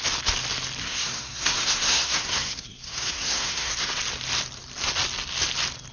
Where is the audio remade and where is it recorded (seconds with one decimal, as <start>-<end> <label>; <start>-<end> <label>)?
0.0-0.8 recorded; 0.8-4.0 remade; 4.0-5.9 recorded